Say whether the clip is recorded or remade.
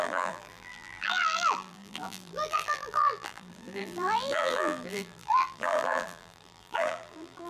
remade